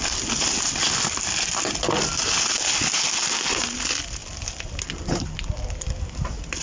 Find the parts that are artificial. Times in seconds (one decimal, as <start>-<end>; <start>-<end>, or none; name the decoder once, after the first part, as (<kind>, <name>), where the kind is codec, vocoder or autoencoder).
none